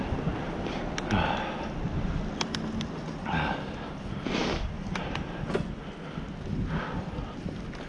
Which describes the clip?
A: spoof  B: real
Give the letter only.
B